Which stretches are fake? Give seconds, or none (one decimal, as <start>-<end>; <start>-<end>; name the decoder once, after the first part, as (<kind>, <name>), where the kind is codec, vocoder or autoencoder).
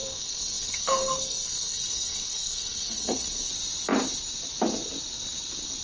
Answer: 0.0-3.5 (codec, SNAC)